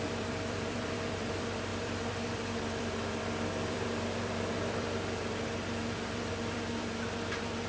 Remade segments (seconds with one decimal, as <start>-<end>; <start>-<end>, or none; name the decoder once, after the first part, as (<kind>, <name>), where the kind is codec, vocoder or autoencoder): 0.0-7.7 (vocoder, BigVGAN v2)